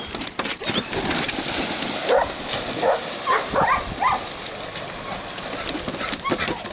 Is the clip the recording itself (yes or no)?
yes